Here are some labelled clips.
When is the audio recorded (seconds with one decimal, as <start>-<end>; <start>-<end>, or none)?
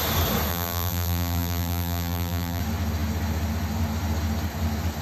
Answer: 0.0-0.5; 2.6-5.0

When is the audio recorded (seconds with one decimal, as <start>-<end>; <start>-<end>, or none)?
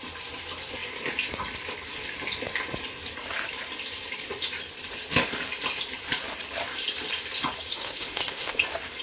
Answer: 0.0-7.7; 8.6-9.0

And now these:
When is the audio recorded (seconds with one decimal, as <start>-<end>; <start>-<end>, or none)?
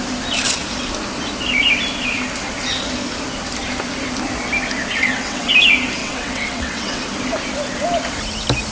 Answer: 0.0-4.9; 5.5-6.0; 7.0-8.7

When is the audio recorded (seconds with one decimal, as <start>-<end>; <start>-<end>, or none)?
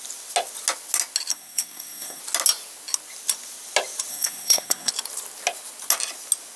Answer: 0.0-1.3; 2.2-4.1; 4.9-6.6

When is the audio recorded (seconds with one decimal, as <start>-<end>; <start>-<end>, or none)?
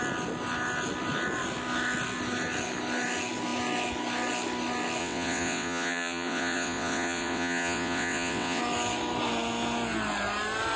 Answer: 0.0-5.0; 8.6-10.8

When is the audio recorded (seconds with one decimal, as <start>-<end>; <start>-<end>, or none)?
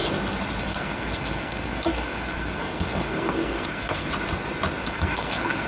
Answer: 0.0-0.6; 4.1-4.8